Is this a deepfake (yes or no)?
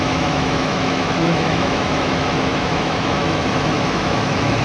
yes